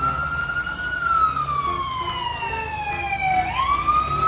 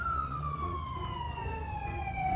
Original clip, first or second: first